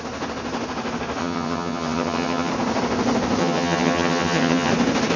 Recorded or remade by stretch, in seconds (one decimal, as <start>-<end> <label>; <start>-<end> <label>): 0.0-1.2 recorded; 1.2-2.5 remade; 2.5-3.4 recorded; 3.4-4.7 remade; 4.7-5.2 recorded